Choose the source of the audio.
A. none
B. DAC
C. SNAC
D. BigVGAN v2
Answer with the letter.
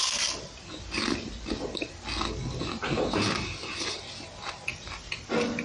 A